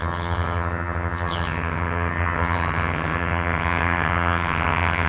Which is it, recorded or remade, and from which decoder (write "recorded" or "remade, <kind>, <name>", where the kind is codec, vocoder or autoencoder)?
remade, vocoder, HiFi-GAN